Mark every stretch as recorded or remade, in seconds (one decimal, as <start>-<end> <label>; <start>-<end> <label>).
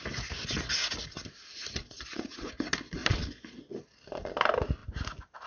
0.0-1.8 recorded; 1.8-2.5 remade; 2.5-3.0 recorded; 3.0-3.8 remade; 3.8-5.5 recorded